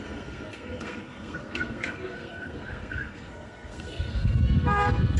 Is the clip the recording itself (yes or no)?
no